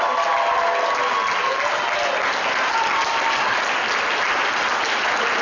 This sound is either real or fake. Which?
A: real